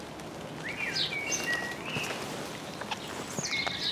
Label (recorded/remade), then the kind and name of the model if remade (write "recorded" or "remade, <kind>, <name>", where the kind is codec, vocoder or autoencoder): recorded